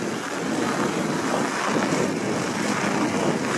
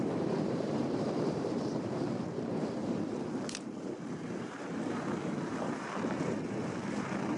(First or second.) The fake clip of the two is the second